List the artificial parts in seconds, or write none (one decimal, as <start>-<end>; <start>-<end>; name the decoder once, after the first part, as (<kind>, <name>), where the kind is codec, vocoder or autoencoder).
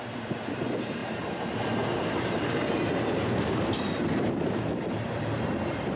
1.0-4.6 (vocoder, BigVGAN v2)